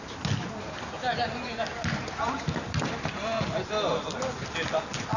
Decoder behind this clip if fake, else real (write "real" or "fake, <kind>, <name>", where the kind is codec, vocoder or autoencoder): real